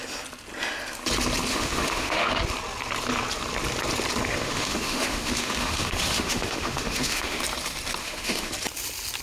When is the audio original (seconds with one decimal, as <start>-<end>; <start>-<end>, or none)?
0.0-1.5; 2.3-4.3; 7.4-8.0; 8.5-9.2